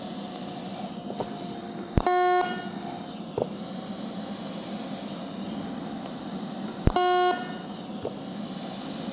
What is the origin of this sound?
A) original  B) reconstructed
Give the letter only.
A